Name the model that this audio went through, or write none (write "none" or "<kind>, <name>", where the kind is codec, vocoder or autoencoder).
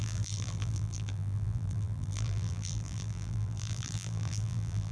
vocoder, BigVGAN v2